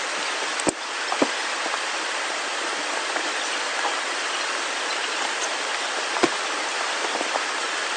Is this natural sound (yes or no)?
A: yes